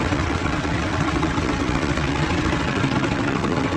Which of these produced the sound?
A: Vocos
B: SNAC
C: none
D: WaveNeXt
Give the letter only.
D